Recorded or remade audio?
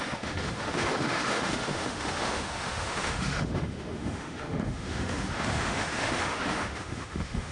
remade